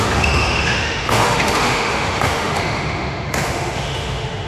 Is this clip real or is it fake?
fake